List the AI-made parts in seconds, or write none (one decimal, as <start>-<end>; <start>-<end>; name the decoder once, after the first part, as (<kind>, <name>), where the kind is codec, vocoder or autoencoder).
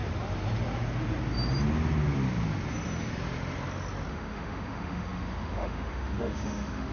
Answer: 4.1-6.9 (autoencoder, DAC-VAE)